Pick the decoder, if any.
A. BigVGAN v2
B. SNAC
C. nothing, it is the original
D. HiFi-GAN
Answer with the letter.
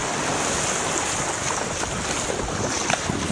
C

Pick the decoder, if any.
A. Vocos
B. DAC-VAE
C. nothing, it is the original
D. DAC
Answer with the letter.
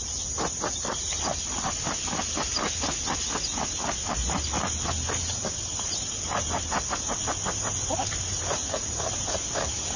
C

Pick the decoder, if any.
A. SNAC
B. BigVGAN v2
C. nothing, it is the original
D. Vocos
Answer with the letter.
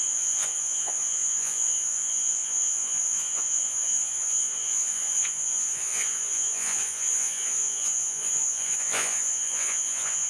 D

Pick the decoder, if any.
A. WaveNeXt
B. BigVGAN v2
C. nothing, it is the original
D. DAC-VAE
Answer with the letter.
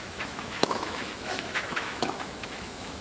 D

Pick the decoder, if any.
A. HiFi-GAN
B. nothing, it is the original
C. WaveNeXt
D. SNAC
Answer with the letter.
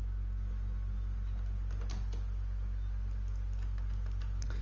B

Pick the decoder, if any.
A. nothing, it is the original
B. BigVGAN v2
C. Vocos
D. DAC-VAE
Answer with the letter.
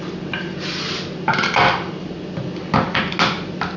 A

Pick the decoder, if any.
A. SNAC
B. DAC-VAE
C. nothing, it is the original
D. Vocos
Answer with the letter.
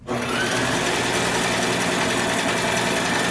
C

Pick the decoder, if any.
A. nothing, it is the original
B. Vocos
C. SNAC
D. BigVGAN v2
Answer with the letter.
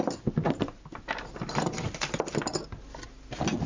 A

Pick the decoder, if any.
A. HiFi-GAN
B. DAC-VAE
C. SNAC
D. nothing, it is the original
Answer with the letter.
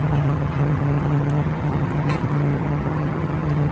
A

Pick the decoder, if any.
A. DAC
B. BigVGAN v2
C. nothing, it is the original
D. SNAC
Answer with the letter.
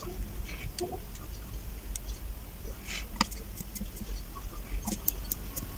C